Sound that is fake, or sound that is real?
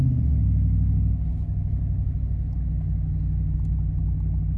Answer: real